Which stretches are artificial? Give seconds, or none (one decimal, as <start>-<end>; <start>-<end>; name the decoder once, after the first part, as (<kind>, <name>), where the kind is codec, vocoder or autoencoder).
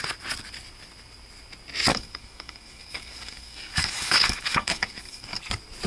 1.9-5.4 (codec, DAC)